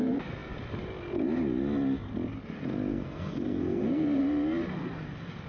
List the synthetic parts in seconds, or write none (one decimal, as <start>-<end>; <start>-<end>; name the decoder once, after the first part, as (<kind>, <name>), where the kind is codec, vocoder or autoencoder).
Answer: 2.9-4.2 (codec, SNAC)